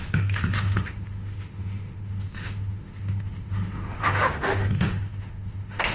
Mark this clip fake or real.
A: fake